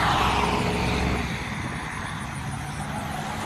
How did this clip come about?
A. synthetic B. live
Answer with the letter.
B